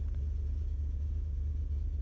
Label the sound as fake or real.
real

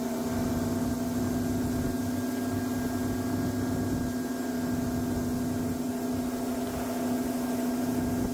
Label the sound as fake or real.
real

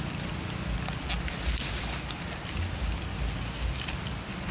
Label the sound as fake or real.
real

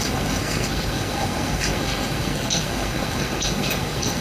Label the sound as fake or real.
fake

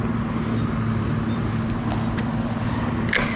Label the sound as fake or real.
real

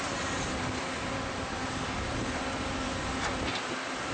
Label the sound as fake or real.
real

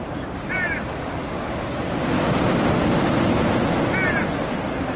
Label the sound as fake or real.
real